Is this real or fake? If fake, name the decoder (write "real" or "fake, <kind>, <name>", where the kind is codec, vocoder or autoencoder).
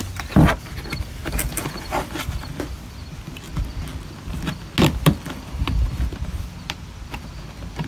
real